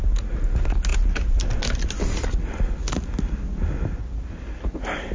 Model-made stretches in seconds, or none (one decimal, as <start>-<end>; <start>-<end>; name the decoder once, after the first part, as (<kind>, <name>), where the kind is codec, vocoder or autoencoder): none